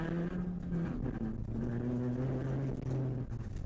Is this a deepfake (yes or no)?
no